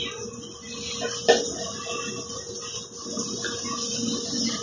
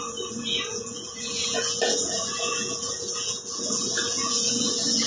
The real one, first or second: first